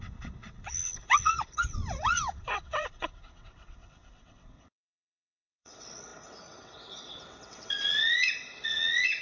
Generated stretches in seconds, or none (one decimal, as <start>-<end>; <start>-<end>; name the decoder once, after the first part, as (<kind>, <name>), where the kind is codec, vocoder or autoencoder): 0.0-9.2 (vocoder, WaveNeXt)